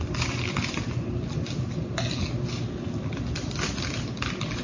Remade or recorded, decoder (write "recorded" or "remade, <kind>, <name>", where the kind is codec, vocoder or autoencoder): recorded